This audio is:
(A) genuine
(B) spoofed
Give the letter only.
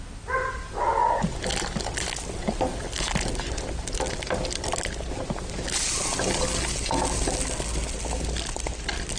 A